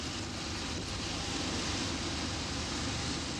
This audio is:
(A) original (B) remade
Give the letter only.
A